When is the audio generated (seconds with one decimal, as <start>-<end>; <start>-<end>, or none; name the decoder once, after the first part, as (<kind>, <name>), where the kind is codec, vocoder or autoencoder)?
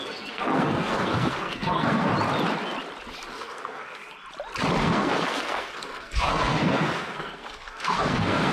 0.0-2.1 (codec, SNAC); 3.3-4.0; 4.8-8.5